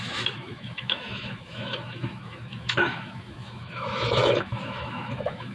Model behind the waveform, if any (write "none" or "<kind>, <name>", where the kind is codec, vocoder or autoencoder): autoencoder, DAC-VAE